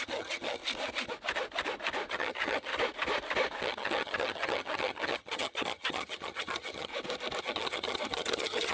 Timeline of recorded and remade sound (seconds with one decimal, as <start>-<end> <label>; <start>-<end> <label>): 0.0-0.6 remade; 0.6-2.1 recorded; 2.1-2.7 remade; 2.7-3.6 recorded; 3.6-6.9 remade; 6.9-7.4 recorded; 7.4-8.7 remade